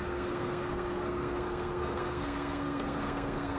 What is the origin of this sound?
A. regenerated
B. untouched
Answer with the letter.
A